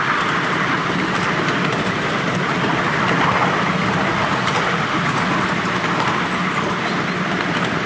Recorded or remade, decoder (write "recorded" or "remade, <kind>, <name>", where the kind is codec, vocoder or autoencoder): recorded